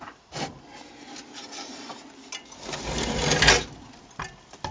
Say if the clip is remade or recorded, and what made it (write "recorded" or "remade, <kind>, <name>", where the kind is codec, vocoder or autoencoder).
recorded